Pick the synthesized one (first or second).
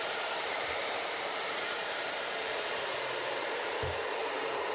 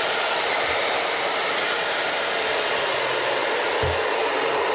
first